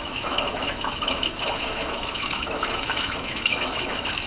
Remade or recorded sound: remade